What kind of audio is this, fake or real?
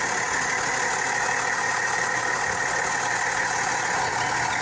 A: real